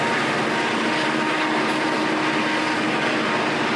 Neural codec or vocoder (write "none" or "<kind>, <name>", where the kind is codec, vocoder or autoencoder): none